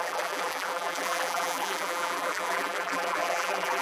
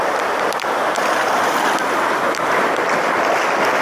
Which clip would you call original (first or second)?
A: second